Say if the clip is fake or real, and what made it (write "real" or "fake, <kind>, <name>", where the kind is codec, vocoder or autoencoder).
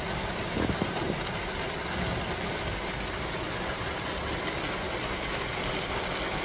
real